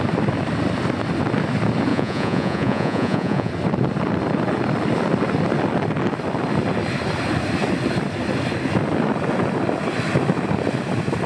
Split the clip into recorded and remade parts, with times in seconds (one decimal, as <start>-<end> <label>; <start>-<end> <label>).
0.0-1.9 recorded; 1.9-3.5 remade; 3.5-11.3 recorded